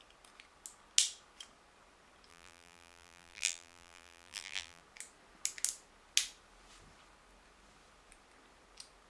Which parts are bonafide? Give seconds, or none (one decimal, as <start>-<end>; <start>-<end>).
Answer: 0.0-2.3; 4.8-9.1